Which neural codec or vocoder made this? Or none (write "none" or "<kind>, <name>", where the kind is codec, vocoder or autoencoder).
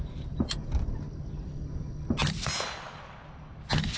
none